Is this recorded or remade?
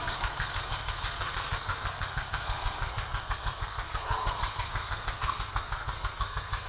remade